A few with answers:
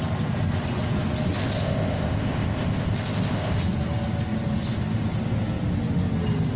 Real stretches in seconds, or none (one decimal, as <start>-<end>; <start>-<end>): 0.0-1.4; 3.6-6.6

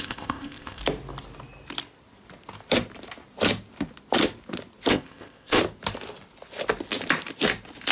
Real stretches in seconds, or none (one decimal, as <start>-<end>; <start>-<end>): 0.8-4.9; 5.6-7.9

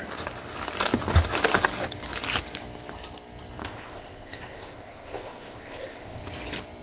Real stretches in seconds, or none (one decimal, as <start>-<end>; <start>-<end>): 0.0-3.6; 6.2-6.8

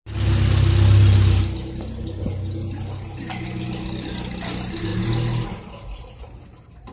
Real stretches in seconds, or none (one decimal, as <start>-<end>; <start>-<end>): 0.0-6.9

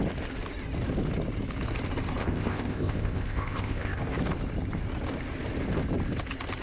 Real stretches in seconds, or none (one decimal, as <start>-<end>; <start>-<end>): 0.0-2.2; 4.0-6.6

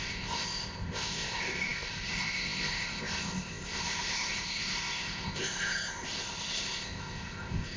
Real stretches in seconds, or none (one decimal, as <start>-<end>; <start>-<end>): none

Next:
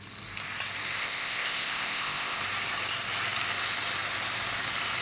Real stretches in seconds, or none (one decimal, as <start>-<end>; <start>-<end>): 0.0-1.0; 2.4-5.0

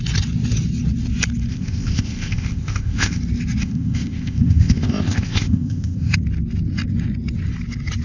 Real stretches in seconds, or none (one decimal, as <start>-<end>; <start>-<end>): 0.0-1.5; 3.2-3.6; 6.1-8.0